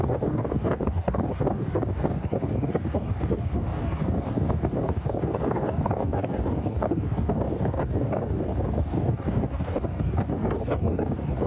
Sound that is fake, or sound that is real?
fake